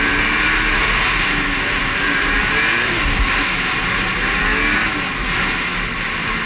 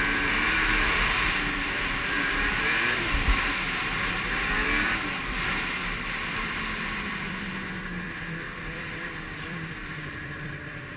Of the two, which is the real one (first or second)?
first